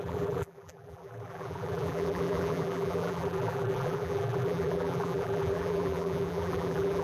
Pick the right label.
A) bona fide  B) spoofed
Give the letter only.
B